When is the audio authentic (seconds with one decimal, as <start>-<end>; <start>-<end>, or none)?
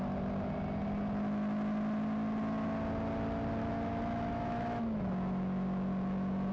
0.0-3.6; 5.0-6.5